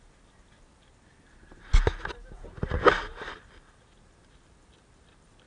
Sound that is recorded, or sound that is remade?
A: recorded